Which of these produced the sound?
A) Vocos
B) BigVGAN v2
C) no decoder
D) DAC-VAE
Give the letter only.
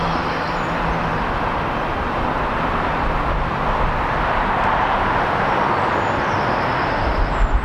C